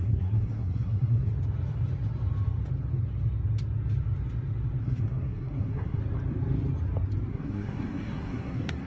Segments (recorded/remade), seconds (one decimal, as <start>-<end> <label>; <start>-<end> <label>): 0.0-1.3 remade; 1.3-4.8 recorded; 4.8-6.0 remade; 6.0-7.3 recorded; 7.3-8.9 remade